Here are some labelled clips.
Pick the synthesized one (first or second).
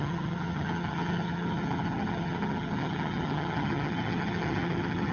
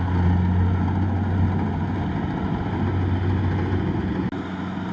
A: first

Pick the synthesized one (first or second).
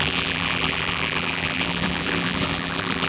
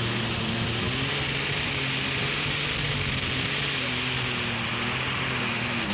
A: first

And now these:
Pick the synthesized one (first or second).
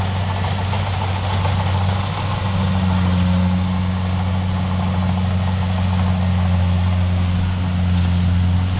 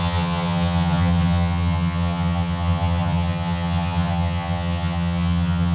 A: second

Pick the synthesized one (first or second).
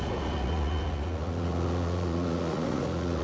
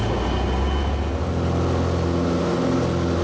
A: first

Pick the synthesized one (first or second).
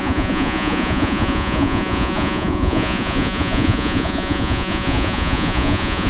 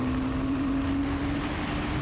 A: first